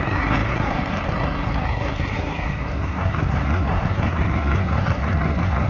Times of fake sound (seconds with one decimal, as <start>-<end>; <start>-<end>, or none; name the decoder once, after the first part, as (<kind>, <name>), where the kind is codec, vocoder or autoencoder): 0.0-5.7 (codec, SNAC)